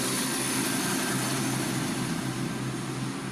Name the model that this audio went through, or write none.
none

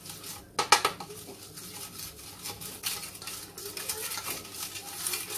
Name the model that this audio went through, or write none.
none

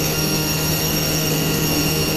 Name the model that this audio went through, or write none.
codec, SNAC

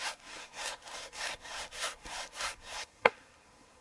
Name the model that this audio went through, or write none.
codec, SNAC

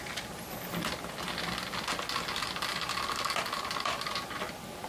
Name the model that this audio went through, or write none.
none